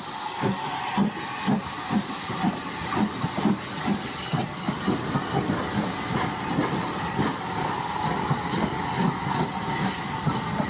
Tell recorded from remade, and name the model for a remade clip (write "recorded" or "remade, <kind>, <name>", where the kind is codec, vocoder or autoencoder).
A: recorded